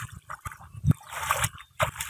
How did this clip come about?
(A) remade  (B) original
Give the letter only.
B